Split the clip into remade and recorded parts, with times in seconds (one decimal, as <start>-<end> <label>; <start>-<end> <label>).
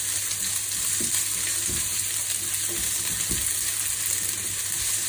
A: 0.0-5.1 recorded